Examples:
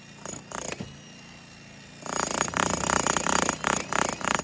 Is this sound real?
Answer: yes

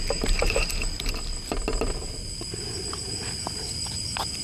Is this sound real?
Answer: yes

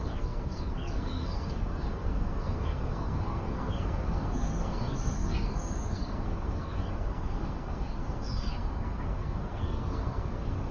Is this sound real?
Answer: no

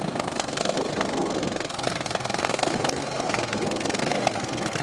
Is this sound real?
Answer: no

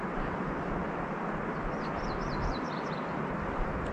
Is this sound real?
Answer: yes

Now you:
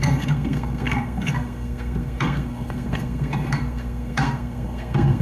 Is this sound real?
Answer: no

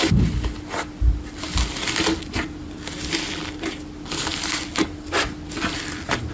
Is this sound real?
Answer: yes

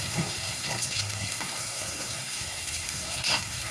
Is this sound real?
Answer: no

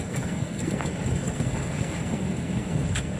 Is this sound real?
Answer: no